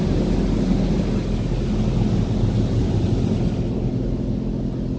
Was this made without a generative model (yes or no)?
yes